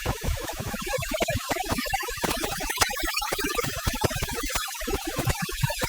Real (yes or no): no